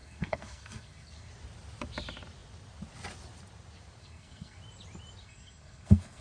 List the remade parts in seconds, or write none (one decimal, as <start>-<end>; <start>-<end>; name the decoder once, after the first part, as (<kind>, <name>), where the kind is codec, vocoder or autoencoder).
0.0-1.3 (codec, SNAC); 4.0-4.6; 5.2-6.2